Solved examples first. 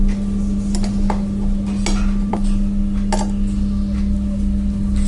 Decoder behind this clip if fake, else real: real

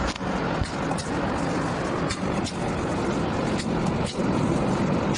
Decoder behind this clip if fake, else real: real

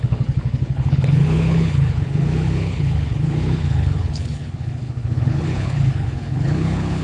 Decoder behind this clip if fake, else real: fake, codec, HILCodec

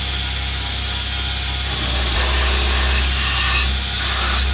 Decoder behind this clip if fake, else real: real